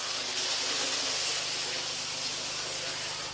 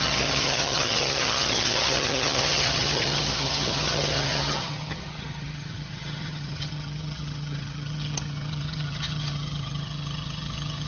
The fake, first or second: second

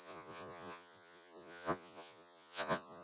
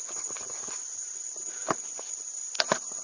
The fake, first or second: first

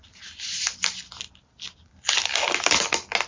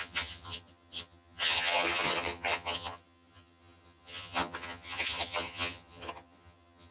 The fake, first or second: second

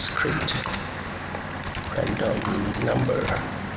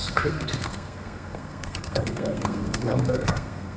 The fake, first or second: second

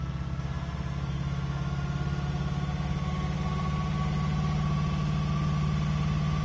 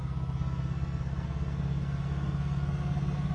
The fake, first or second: second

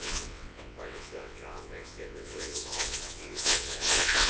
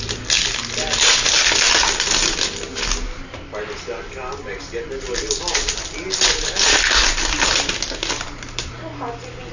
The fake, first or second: first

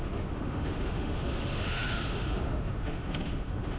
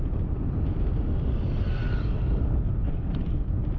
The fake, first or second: first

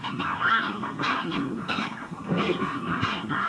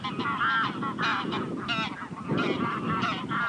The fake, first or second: first